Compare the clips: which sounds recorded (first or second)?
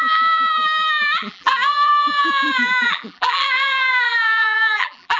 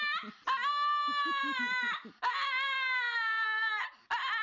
second